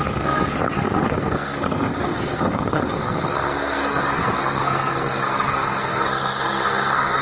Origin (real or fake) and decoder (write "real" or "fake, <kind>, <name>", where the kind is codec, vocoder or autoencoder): fake, codec, SNAC